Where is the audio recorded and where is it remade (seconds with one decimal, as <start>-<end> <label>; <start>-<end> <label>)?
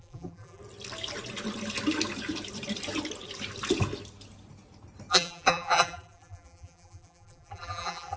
0.0-0.6 remade; 0.6-5.1 recorded; 5.1-8.2 remade